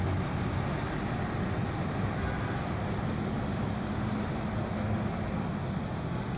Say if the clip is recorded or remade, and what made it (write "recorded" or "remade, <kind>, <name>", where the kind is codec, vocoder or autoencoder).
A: recorded